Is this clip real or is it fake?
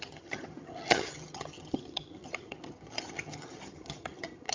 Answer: fake